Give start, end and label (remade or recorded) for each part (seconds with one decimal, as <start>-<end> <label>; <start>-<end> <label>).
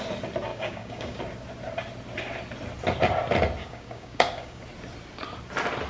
0.0-0.5 recorded; 0.5-1.2 remade; 1.2-3.6 recorded; 3.6-4.6 remade; 4.6-5.9 recorded